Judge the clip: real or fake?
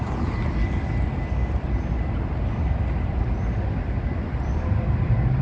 real